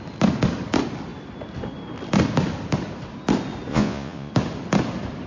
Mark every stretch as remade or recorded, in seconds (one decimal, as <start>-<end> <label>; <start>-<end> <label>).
0.0-3.7 recorded; 3.7-4.3 remade; 4.3-5.3 recorded